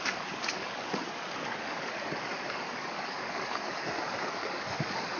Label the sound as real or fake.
fake